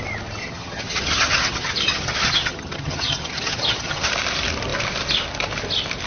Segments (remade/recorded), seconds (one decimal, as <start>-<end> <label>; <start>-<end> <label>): 0.0-0.4 recorded; 0.4-4.1 remade; 4.1-6.1 recorded